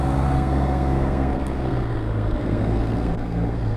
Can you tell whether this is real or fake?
fake